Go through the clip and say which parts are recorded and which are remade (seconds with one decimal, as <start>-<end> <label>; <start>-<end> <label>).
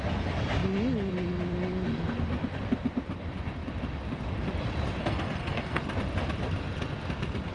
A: 0.0-5.0 recorded; 5.0-5.8 remade; 5.8-7.5 recorded